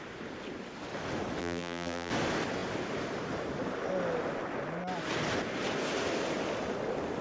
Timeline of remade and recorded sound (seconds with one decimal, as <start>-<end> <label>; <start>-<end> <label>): 0.0-1.4 recorded; 1.4-2.1 remade; 2.1-7.2 recorded